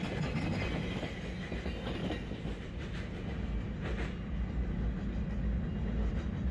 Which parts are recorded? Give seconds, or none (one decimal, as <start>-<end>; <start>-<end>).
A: 0.0-2.0; 2.6-6.5